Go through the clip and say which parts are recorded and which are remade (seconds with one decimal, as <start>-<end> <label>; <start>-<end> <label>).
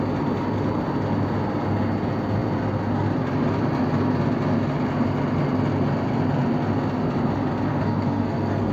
0.0-7.7 recorded; 7.7-8.7 remade